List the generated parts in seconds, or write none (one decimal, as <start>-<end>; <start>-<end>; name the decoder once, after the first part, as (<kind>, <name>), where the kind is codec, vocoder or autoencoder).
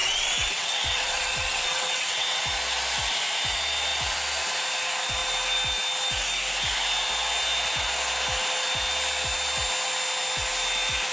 0.0-2.4 (vocoder, WaveNeXt)